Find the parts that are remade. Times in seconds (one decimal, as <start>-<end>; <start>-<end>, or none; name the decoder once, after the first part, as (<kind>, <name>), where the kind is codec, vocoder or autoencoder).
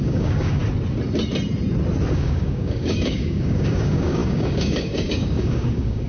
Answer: 0.0-0.6 (codec, DAC); 2.1-6.1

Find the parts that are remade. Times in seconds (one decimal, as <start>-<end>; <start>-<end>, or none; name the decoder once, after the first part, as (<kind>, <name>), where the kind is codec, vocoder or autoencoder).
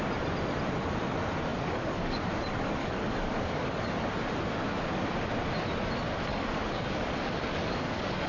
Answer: 1.5-2.3 (codec, DAC); 2.8-3.8; 6.3-8.3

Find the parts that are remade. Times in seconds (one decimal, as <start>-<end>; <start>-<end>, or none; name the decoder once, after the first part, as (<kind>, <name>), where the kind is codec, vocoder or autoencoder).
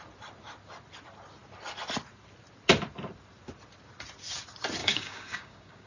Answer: 4.8-5.9 (codec, DAC)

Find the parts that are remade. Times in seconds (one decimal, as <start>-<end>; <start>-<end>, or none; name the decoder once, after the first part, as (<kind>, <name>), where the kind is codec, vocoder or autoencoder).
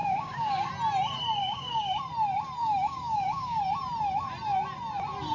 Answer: 0.0-0.7 (codec, DAC); 1.4-2.0; 2.6-3.6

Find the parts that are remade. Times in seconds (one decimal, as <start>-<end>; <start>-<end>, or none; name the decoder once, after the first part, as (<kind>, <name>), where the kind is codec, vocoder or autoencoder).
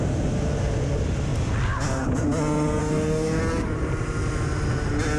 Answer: 2.8-3.4 (codec, DAC)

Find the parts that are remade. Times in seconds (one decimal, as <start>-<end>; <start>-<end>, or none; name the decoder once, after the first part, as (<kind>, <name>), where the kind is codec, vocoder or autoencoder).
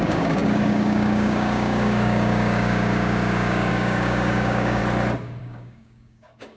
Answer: 0.0-4.8 (codec, DAC); 5.4-6.6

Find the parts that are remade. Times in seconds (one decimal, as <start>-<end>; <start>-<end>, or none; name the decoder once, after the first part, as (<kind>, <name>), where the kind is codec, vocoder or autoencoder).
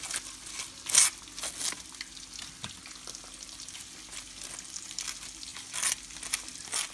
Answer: none